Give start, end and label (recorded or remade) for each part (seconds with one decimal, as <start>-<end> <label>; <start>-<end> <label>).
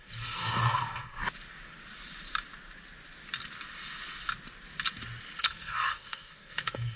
0.0-1.2 remade; 1.2-5.4 recorded; 5.4-7.0 remade